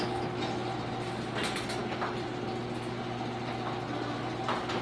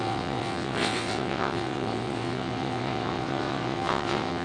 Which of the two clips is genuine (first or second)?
first